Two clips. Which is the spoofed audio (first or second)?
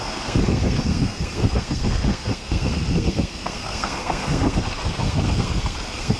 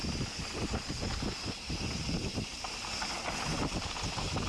first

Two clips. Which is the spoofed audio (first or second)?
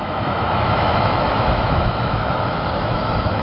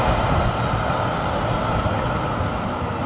first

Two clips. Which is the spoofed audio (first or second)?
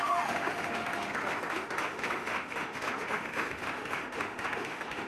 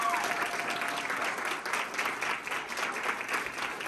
first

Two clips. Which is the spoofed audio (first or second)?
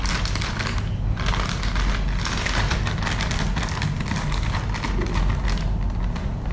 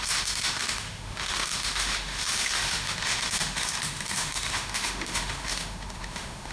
second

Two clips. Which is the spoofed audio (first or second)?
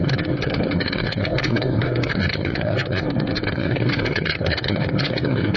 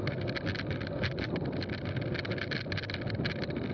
first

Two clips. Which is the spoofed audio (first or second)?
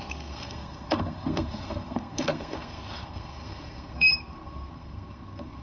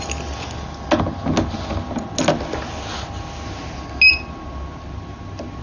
first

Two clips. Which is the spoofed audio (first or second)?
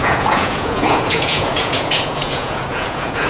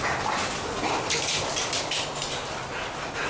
first